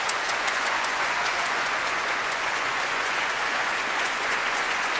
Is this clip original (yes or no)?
no